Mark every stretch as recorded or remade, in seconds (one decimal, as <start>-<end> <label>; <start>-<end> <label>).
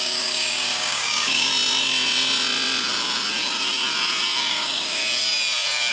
0.0-1.5 remade; 1.5-4.5 recorded; 4.5-5.0 remade; 5.0-5.9 recorded